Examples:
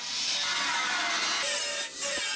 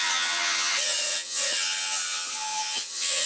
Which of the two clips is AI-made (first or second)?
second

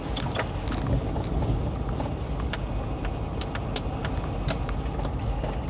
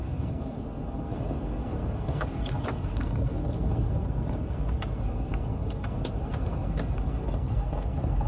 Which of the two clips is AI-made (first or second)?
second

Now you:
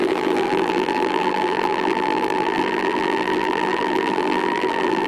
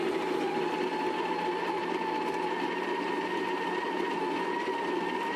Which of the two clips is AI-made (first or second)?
first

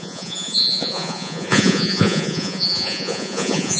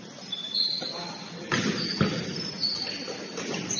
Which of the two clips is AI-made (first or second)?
first